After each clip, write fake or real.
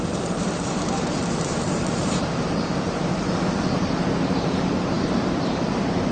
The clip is fake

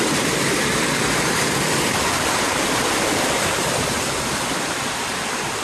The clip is real